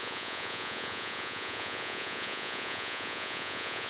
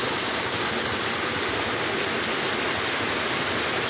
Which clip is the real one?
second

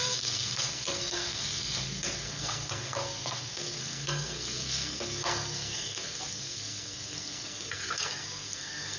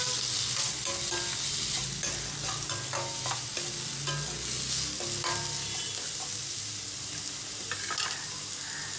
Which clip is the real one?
second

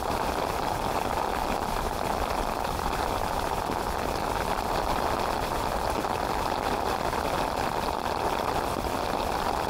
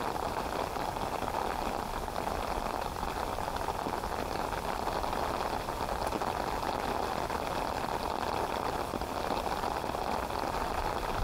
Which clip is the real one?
second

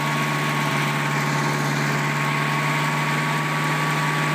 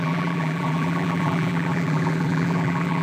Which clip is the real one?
first